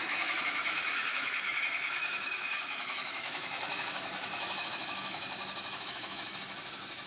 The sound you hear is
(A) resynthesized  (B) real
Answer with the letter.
A